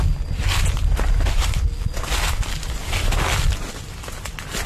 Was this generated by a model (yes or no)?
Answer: no